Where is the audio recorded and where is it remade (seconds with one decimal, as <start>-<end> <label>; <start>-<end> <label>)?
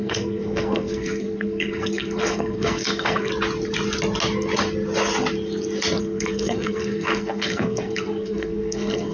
0.0-3.3 remade; 3.3-6.0 recorded; 6.0-9.1 remade